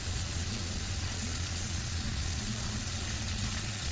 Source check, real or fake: fake